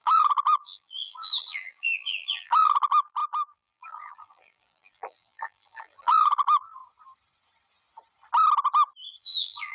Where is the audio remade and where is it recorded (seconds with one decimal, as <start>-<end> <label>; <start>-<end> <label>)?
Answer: 0.0-6.8 remade; 6.8-9.2 recorded; 9.2-9.7 remade